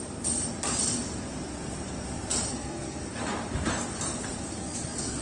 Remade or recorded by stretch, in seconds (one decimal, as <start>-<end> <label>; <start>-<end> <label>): 0.0-2.5 recorded; 2.5-3.2 remade; 3.2-4.6 recorded; 4.6-5.2 remade